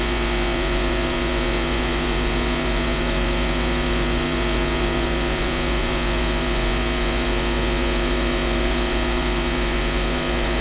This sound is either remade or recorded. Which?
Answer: remade